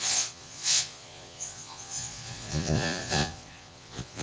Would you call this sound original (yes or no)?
no